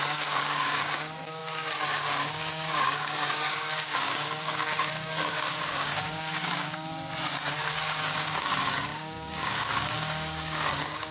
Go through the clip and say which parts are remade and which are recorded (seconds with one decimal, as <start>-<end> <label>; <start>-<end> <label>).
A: 0.0-6.9 remade; 6.9-7.7 recorded; 7.7-11.1 remade